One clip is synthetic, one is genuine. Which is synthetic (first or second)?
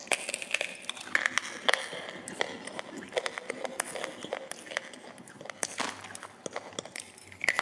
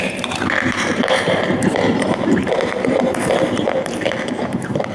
second